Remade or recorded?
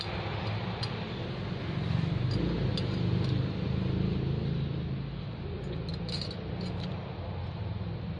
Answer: recorded